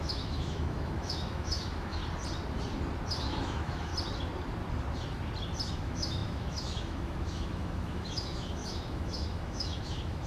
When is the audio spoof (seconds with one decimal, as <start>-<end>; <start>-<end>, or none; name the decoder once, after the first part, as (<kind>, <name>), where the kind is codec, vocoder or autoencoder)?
0.0-2.0 (autoencoder, DAC-VAE); 3.1-3.9; 5.7-10.3